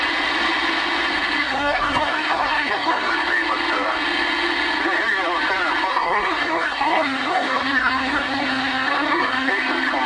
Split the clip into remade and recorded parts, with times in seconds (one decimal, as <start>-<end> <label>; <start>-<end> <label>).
0.0-1.4 recorded; 1.4-3.1 remade; 3.1-5.9 recorded; 5.9-9.5 remade; 9.5-10.1 recorded